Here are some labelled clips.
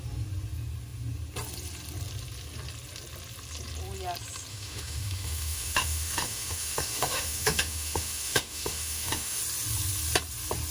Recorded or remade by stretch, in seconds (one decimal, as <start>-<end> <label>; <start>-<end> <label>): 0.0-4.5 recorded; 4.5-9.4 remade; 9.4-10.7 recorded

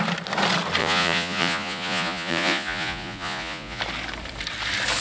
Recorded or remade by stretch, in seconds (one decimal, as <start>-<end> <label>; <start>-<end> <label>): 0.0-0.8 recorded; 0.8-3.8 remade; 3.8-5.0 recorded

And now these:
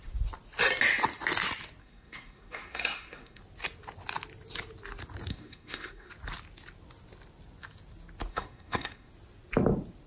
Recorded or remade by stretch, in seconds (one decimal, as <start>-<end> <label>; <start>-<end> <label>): 0.0-1.8 recorded; 1.8-3.4 remade; 3.4-5.3 recorded; 5.3-6.1 remade; 6.1-8.3 recorded; 8.3-9.1 remade; 9.1-10.1 recorded

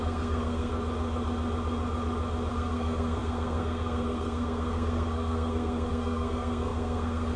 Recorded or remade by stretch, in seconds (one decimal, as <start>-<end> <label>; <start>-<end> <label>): 0.0-0.7 remade; 0.7-2.5 recorded; 2.5-7.4 remade

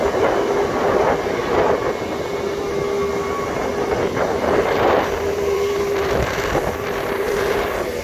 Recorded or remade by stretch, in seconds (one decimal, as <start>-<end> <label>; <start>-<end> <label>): 0.0-3.7 recorded; 3.7-7.6 remade; 7.6-8.0 recorded

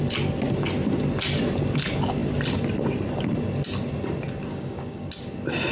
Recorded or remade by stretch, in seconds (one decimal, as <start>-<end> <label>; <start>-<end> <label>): 0.0-4.5 recorded; 4.5-5.1 remade; 5.1-5.7 recorded

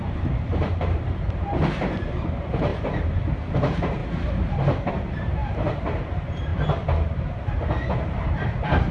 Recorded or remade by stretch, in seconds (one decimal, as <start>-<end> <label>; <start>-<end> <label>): 0.0-2.7 remade; 2.7-3.5 recorded; 3.5-4.0 remade; 4.0-4.9 recorded; 4.9-6.5 remade; 6.5-8.9 recorded

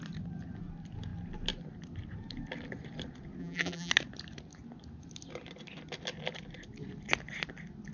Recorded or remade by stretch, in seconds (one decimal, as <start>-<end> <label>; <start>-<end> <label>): 0.0-3.4 recorded; 3.4-3.9 remade; 3.9-7.9 recorded